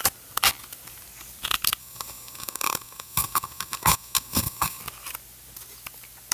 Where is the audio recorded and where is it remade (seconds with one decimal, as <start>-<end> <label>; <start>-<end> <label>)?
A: 0.0-1.8 recorded; 1.8-4.8 remade; 4.8-6.3 recorded